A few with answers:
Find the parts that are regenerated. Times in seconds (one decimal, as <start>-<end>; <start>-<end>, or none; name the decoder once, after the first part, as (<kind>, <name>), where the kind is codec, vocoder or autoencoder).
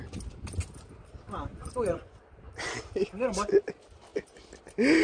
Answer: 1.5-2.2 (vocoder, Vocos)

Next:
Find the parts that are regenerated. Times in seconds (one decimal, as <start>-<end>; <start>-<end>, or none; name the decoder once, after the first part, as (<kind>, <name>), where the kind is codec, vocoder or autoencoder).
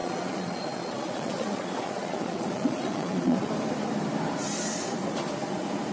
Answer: 0.0-3.5 (vocoder, Vocos)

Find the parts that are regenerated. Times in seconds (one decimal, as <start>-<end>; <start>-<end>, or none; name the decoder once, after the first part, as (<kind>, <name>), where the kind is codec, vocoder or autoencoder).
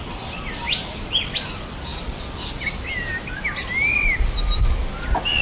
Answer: none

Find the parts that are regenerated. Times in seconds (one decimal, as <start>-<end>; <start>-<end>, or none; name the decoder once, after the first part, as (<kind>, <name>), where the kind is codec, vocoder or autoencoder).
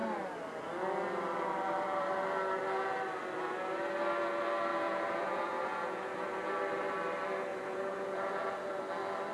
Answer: 4.7-6.5 (vocoder, Vocos); 7.5-8.8